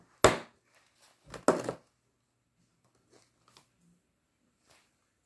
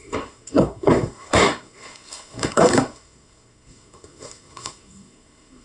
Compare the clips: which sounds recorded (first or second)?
first